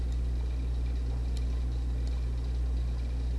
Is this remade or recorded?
recorded